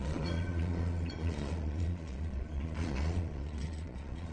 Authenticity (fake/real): fake